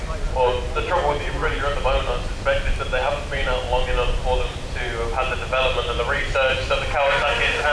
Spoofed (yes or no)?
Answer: no